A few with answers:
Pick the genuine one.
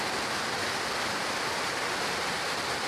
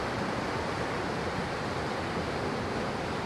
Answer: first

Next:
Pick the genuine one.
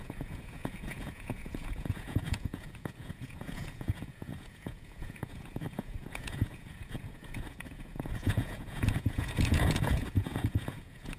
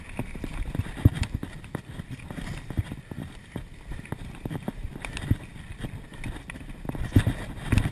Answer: second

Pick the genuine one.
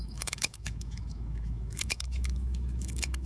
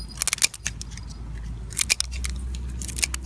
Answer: second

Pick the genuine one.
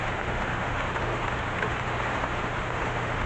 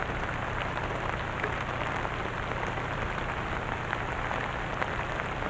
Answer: second